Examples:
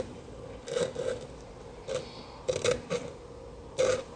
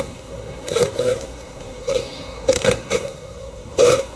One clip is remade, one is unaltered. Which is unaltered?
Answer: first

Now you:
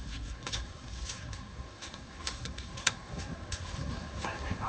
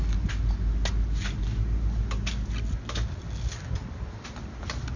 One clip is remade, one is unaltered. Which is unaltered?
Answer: second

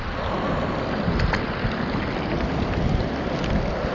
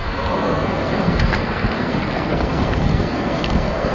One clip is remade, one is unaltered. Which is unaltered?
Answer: first